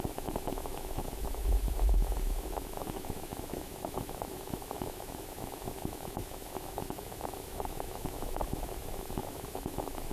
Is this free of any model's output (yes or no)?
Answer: no